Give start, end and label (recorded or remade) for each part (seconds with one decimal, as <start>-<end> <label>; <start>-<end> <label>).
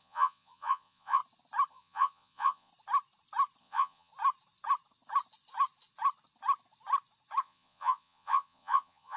0.0-1.2 remade; 1.2-1.7 recorded; 1.7-2.7 remade; 2.7-3.6 recorded; 3.6-4.1 remade; 4.1-7.4 recorded; 7.4-9.2 remade